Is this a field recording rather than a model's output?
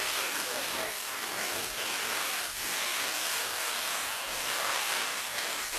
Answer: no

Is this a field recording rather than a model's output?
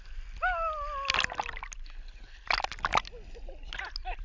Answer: yes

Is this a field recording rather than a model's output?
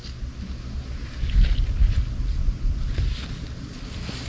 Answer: yes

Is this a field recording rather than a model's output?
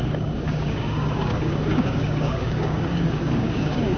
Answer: no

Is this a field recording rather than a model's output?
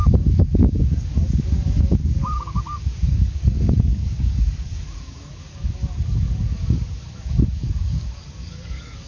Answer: no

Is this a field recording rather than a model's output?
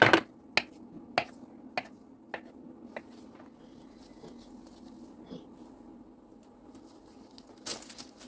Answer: yes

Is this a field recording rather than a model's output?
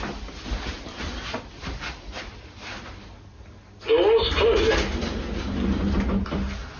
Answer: yes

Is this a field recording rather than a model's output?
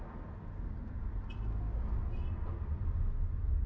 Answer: yes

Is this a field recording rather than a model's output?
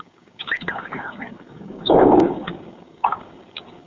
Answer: no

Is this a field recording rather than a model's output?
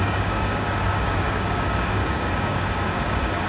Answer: no